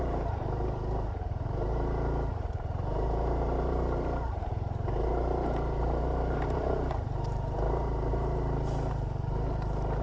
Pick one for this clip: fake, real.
fake